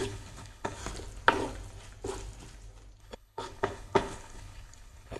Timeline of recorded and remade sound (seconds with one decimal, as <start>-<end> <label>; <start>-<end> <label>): 0.0-0.8 remade; 0.8-3.0 recorded; 3.0-5.2 remade